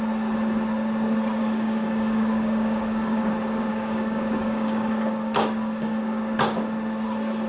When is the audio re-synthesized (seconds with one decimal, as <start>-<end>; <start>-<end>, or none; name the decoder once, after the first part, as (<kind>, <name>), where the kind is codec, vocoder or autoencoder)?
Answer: 1.4-3.3 (codec, DAC); 3.7-6.3